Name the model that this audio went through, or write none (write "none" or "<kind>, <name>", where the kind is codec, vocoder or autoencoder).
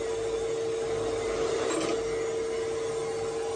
none